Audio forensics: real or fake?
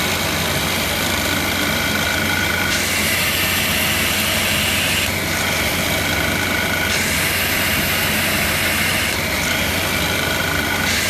real